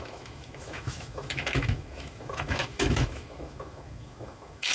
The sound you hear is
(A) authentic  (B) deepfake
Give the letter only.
B